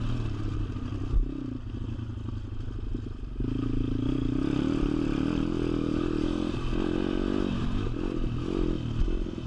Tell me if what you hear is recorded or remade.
recorded